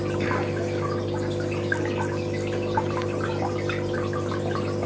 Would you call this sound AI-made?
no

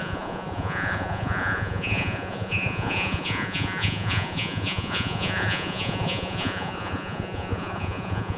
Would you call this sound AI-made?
yes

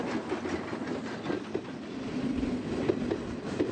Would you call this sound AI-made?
no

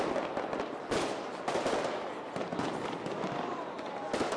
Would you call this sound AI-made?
no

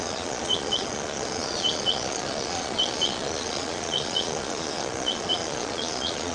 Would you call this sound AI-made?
yes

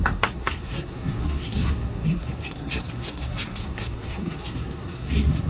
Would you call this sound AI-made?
yes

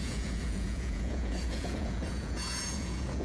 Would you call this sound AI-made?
yes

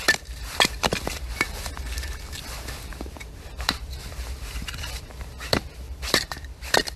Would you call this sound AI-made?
yes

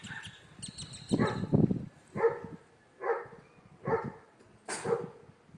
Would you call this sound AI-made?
no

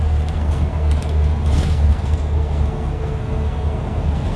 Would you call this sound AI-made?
yes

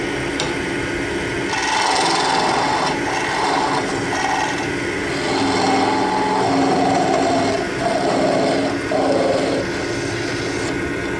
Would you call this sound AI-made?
no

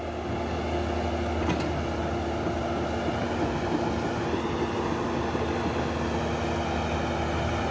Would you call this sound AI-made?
no